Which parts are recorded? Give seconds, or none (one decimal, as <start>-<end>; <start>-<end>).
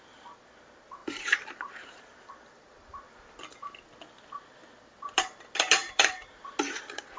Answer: 0.0-1.0; 2.3-5.8; 6.3-7.2